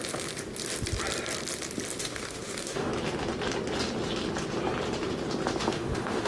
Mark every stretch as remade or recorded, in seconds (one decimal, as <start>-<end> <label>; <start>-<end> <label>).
0.0-2.0 recorded; 2.0-2.9 remade; 2.9-5.6 recorded; 5.6-6.3 remade